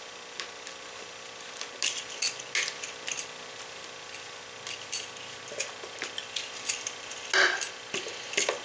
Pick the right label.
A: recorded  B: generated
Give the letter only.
A